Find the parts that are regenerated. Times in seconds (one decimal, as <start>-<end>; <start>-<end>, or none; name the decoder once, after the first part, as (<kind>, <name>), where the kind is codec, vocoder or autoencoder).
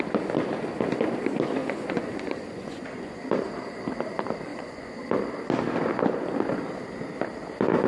1.6-3.2 (vocoder, Vocos); 4.5-5.0